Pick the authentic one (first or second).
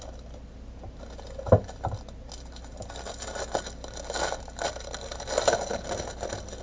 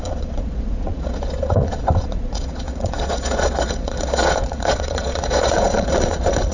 first